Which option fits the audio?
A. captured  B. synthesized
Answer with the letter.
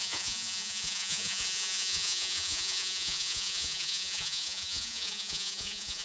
B